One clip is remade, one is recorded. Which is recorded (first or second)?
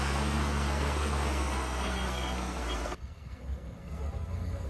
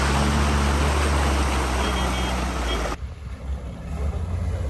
second